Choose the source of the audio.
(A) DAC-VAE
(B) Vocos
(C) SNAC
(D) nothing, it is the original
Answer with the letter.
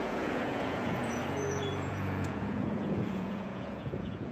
B